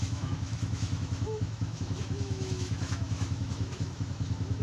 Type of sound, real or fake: fake